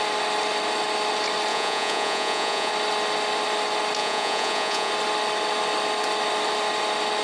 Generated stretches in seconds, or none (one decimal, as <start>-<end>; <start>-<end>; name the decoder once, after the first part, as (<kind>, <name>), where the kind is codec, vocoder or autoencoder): 1.5-2.7 (vocoder, Vocos); 4.0-4.9